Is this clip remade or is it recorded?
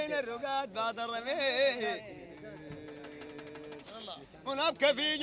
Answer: recorded